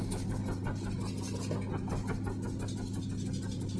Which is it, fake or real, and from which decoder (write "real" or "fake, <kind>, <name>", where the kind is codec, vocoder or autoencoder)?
real